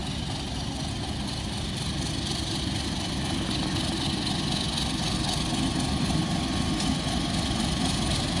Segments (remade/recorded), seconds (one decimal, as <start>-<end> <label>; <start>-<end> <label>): 0.0-8.4 recorded